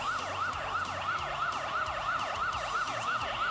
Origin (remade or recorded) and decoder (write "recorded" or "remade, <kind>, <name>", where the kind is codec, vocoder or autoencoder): recorded